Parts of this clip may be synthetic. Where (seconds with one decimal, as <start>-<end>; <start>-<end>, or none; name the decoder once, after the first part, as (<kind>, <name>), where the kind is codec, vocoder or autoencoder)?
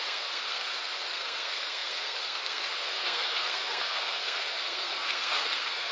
0.0-5.9 (codec, SNAC)